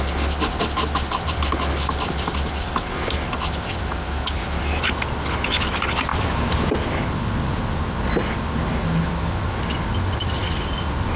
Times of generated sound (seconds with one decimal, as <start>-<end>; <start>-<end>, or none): 6.1-6.7